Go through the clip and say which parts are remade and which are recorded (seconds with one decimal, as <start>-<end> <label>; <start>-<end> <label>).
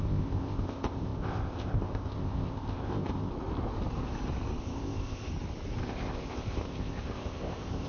0.0-3.3 remade; 3.3-4.6 recorded; 4.6-5.3 remade; 5.3-5.8 recorded; 5.8-7.9 remade